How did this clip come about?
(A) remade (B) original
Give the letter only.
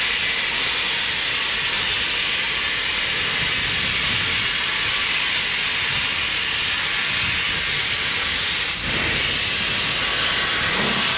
B